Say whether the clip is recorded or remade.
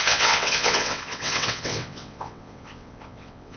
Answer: remade